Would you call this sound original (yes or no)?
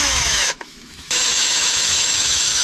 no